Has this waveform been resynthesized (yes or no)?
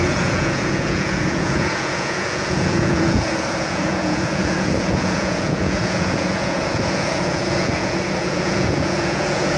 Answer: yes